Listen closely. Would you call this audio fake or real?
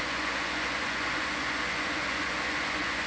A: fake